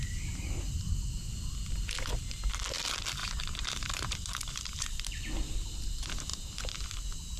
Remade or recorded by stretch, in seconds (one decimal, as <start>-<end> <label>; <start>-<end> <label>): 0.0-0.6 remade; 0.6-3.2 recorded; 3.2-5.2 remade; 5.2-7.4 recorded